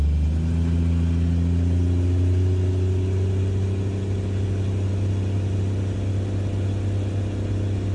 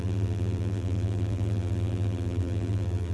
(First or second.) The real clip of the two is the first